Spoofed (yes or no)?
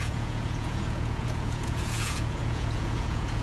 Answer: yes